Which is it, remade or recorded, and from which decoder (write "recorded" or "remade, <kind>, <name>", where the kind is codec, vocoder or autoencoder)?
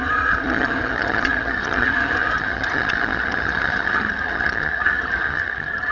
remade, vocoder, HiFi-GAN